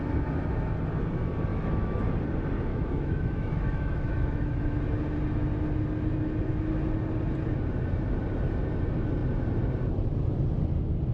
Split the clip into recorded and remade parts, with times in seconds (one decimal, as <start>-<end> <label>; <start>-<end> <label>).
0.0-1.5 recorded; 1.5-2.0 remade; 2.0-2.7 recorded; 2.7-4.8 remade; 4.8-11.1 recorded